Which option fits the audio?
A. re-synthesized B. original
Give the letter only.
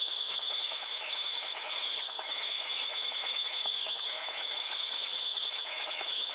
A